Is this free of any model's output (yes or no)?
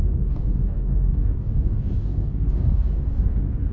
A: no